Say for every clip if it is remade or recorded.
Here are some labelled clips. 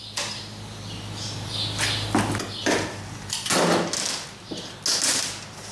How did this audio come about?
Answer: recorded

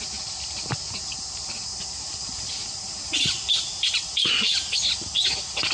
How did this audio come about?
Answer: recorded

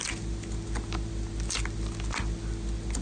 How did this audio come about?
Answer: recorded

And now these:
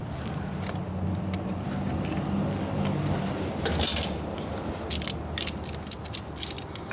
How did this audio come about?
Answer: recorded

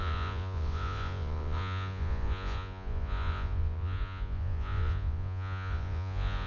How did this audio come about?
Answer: remade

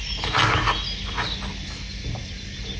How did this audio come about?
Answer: recorded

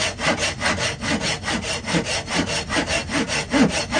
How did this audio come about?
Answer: recorded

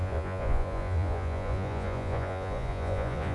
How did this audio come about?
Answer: remade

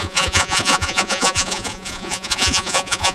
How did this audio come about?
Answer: remade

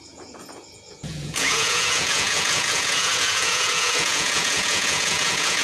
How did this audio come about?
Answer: remade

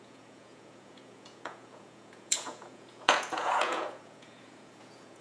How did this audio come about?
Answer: remade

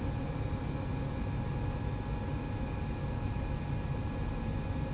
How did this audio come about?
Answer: recorded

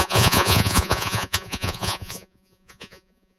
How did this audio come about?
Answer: remade